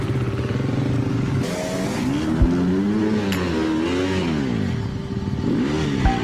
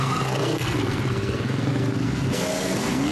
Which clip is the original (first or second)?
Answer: first